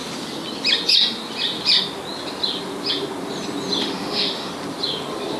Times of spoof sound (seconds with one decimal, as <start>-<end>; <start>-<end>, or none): 3.8-4.5